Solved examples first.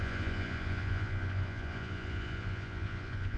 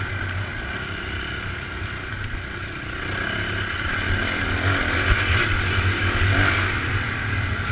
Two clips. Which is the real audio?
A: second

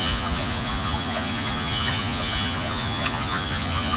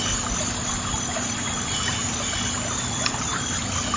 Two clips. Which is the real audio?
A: second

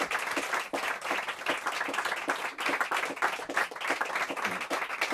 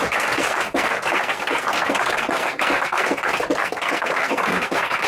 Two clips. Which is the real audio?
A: first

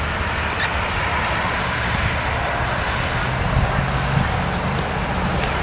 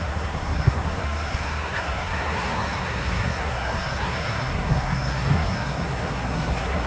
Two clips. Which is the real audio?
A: first